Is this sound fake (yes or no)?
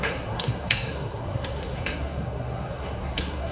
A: yes